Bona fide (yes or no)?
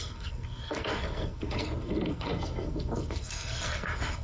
no